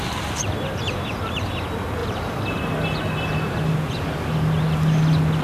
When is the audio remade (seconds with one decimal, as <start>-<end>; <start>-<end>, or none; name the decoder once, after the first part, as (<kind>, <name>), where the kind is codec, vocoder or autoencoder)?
0.0-1.5 (vocoder, BigVGAN v2); 2.0-2.6